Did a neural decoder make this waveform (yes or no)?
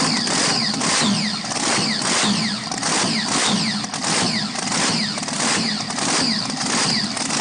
no